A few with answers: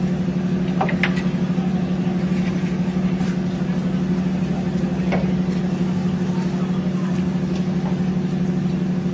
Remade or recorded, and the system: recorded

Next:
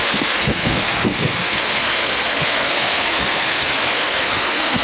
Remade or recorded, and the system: remade, codec, SNAC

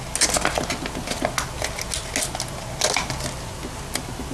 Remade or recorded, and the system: recorded